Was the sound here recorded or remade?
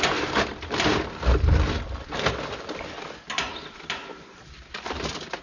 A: recorded